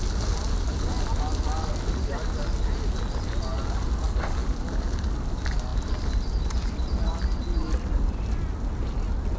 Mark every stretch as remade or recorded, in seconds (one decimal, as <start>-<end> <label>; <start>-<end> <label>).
0.0-9.4 recorded